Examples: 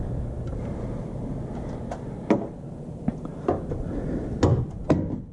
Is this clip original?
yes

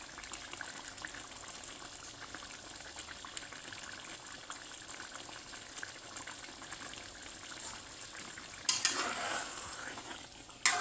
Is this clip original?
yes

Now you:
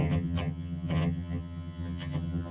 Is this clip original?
no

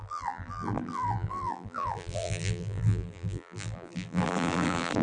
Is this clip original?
no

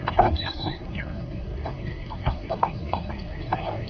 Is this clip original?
no